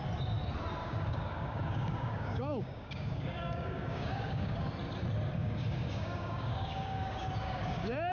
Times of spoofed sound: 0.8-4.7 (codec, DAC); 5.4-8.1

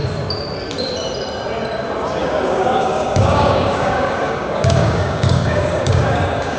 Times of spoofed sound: 2.2-6.6 (codec, DAC)

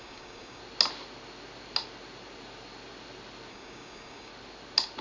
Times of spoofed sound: 0.0-0.6 (codec, DAC); 3.5-4.3

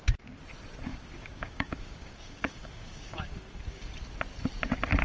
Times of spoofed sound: 0.9-3.9 (codec, DAC)

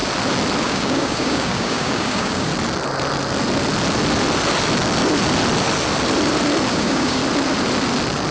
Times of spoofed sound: 0.6-2.5 (codec, DAC); 6.7-7.2